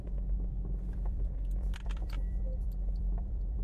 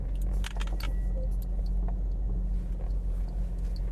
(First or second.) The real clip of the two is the second